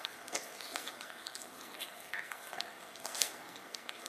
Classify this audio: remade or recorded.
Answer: remade